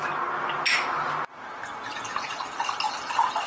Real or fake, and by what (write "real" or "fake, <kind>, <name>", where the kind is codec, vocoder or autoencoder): real